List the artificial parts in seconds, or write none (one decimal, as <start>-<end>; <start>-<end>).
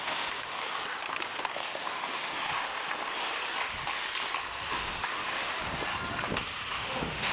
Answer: 0.0-0.8; 1.5-2.5; 4.7-5.5; 6.7-7.3